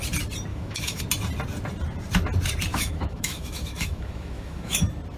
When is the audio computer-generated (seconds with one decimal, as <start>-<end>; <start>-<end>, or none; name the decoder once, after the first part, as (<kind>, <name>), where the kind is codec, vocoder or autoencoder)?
0.5-1.0 (autoencoder, DAC-VAE); 2.7-4.8